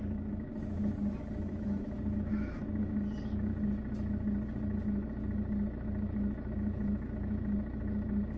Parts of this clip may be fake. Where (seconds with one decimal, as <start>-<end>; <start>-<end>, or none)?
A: 0.0-3.5; 4.8-8.4